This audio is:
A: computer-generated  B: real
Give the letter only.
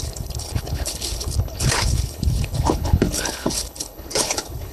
A